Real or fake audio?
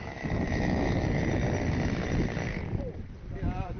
real